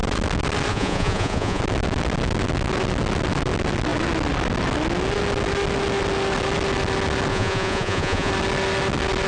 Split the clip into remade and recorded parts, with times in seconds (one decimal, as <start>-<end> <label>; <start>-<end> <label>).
0.0-0.7 recorded; 0.7-1.6 remade; 1.6-7.3 recorded; 7.3-8.3 remade; 8.3-9.3 recorded